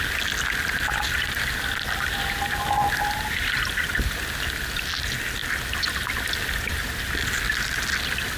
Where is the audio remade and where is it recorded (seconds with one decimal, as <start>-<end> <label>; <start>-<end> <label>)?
0.0-8.4 recorded